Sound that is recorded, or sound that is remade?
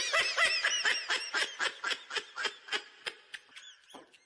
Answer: recorded